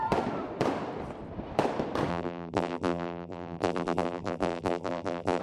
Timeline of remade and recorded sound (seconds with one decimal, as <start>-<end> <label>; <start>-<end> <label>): 0.0-2.1 recorded; 2.1-5.4 remade